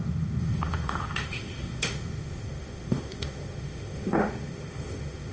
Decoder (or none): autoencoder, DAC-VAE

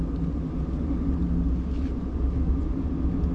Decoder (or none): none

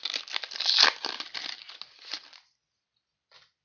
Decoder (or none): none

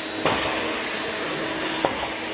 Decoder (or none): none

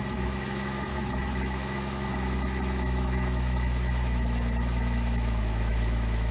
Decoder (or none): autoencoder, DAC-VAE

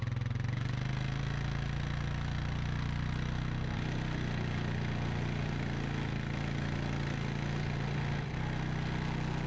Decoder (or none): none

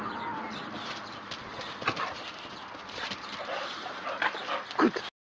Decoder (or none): none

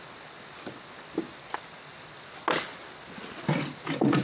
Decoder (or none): none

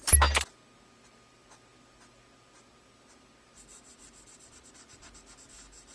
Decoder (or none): none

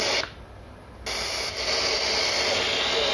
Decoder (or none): none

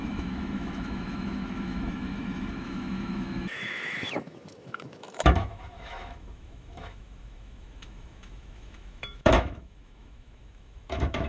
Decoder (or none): autoencoder, DAC-VAE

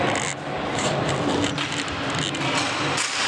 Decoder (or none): none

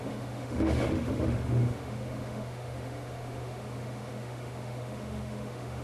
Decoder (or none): autoencoder, DAC-VAE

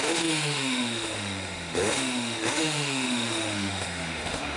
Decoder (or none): autoencoder, DAC-VAE